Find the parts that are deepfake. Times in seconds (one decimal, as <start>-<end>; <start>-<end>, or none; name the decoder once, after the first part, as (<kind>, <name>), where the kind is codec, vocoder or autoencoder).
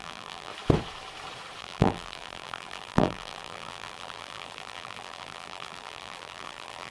0.0-0.5 (vocoder, BigVGAN v2); 1.6-6.9